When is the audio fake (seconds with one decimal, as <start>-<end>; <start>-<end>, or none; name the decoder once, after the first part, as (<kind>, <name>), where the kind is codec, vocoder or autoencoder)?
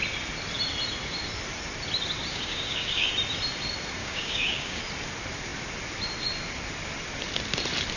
2.3-3.1 (codec, DAC); 4.0-4.8